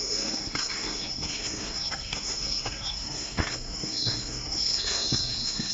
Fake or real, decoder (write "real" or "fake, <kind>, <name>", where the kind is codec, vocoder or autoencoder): fake, codec, SNAC